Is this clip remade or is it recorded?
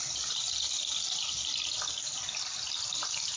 recorded